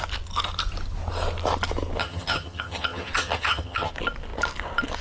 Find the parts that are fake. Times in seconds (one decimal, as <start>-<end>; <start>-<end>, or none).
2.0-3.9